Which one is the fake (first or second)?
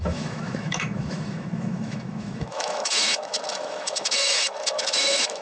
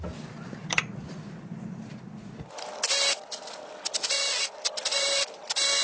first